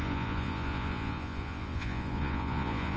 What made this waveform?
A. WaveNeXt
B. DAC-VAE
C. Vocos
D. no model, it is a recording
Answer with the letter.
C